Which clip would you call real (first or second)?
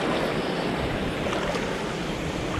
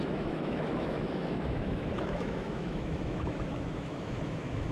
first